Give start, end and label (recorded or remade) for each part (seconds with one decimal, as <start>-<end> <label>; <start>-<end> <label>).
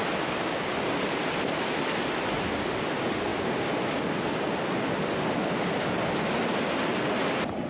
0.0-7.7 recorded